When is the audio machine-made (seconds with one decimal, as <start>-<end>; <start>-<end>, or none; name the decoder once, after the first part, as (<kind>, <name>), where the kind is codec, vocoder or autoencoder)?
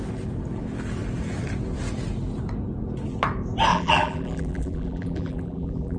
3.7-6.0 (vocoder, BigVGAN v2)